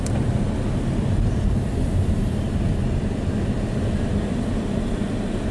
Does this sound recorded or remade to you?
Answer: recorded